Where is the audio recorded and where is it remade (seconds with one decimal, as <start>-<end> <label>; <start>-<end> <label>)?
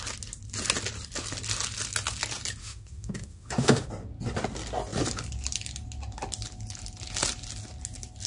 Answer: 0.0-2.6 recorded; 2.6-3.9 remade; 3.9-8.3 recorded